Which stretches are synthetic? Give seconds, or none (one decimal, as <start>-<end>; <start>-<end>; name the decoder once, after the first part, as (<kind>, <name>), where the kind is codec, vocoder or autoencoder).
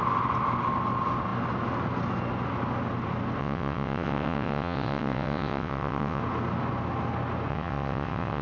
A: 3.4-6.2 (vocoder, WaveNeXt); 7.5-8.4